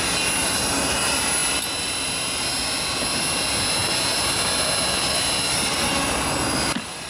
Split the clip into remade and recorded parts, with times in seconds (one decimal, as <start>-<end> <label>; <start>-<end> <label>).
0.0-7.1 recorded